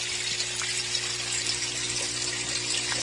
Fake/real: real